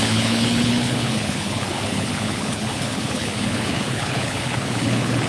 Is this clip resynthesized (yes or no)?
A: yes